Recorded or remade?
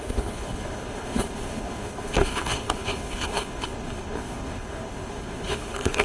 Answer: remade